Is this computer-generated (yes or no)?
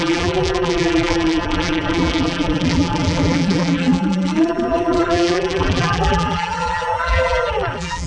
yes